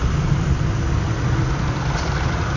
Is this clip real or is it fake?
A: real